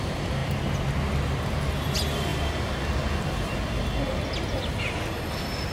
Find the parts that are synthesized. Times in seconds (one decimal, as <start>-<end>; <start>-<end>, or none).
none